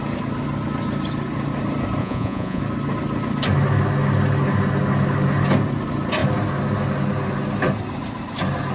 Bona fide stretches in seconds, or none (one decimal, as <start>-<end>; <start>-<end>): 0.0-2.0; 2.6-8.7

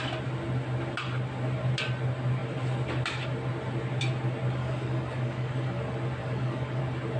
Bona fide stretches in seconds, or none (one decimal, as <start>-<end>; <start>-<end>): 0.0-4.6; 5.8-6.2; 6.8-7.2

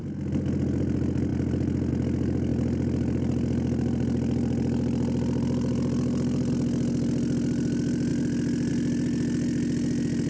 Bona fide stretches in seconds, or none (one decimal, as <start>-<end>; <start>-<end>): 0.0-2.5; 6.5-10.3

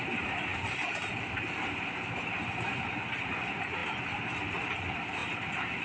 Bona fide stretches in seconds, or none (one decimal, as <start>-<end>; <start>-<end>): 0.0-0.5; 1.7-5.2

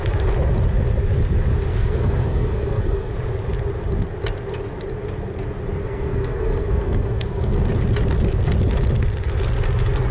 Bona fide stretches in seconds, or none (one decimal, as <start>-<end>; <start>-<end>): 0.0-1.7; 3.1-5.8; 7.7-10.1